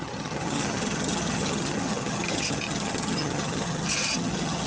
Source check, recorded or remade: remade